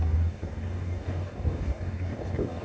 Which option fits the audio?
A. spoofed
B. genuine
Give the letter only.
A